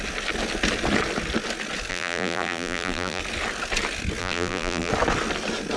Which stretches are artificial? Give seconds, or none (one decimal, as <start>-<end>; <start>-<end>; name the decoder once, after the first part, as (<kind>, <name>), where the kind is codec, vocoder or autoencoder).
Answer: 1.9-3.2 (vocoder, BigVGAN v2); 4.2-4.9